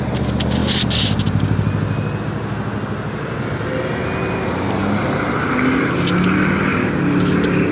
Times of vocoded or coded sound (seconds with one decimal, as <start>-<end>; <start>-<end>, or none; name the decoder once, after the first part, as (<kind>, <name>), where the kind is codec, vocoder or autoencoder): none

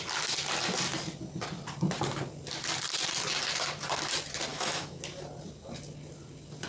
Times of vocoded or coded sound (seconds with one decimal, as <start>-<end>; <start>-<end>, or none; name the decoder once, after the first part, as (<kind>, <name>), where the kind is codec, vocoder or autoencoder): 4.5-5.0 (autoencoder, DAC-VAE)

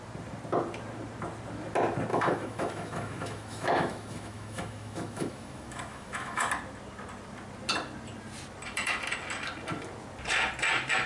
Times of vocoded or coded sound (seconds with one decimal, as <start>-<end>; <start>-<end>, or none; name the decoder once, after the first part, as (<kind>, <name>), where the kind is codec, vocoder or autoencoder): 2.1-6.5 (autoencoder, DAC-VAE)

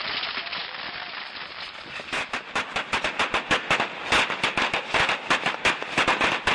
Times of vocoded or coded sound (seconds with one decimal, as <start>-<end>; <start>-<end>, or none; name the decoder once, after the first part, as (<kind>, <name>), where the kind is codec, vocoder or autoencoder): none

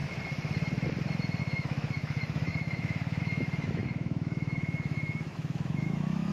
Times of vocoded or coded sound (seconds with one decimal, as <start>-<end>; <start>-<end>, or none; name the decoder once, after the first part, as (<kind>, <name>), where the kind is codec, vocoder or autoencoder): 1.4-6.3 (autoencoder, DAC-VAE)